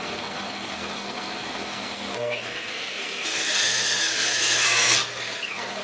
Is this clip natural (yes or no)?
no